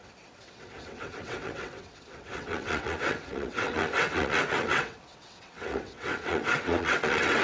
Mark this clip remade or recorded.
remade